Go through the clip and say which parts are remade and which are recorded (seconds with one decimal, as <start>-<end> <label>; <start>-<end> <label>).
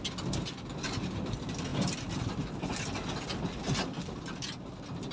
0.0-5.1 recorded